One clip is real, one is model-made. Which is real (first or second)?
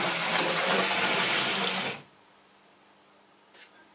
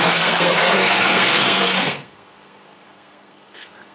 first